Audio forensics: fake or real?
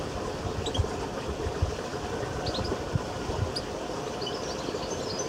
real